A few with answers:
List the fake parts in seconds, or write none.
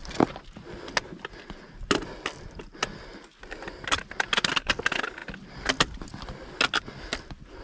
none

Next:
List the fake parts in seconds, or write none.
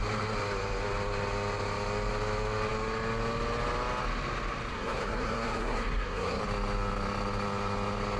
4.7-6.4 (codec, SNAC)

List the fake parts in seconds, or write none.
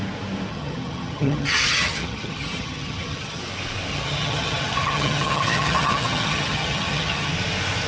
0.5-3.4 (vocoder, HiFi-GAN); 3.9-7.3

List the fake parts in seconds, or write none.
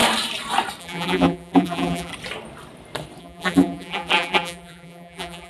0.8-2.1 (vocoder, BigVGAN v2); 3.2-5.5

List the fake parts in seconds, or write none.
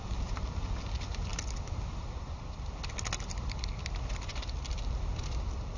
none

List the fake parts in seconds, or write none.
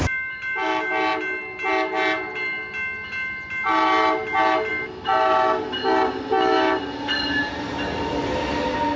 none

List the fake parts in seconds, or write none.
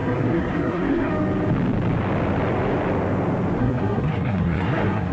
0.0-1.1 (codec, SNAC); 3.6-5.1